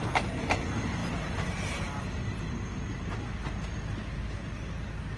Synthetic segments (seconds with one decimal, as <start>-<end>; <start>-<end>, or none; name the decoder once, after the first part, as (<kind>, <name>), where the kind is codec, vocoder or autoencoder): none